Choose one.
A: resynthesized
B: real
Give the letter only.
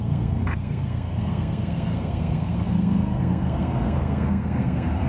A